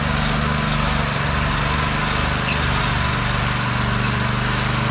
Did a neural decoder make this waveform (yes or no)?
no